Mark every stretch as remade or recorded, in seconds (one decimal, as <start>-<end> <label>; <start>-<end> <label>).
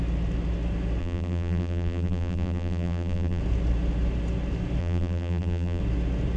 0.0-1.0 recorded; 1.0-3.4 remade; 3.4-4.8 recorded; 4.8-5.8 remade; 5.8-6.4 recorded